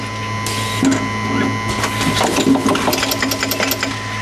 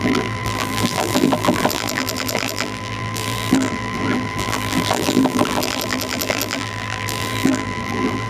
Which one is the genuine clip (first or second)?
first